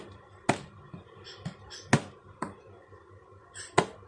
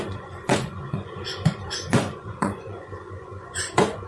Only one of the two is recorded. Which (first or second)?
first